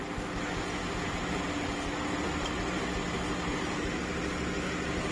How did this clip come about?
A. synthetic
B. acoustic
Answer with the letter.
B